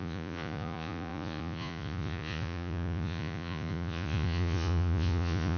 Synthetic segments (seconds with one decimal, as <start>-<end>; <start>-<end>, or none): 0.0-5.6